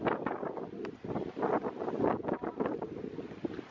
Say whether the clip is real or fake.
real